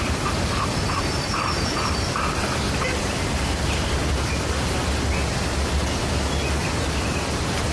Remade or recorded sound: recorded